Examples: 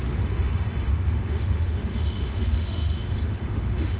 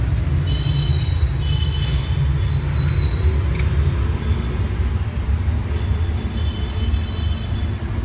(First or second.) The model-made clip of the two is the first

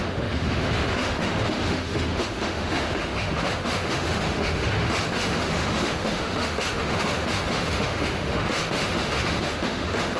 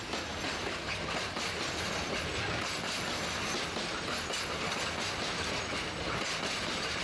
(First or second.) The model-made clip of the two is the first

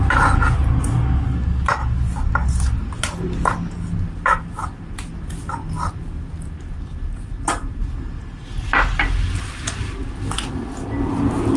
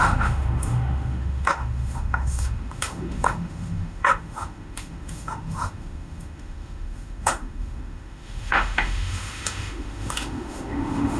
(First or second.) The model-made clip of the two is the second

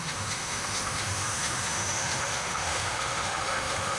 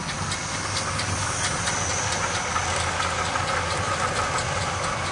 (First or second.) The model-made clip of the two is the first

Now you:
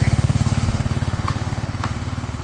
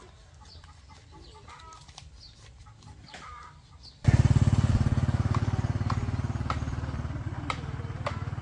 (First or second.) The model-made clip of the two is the first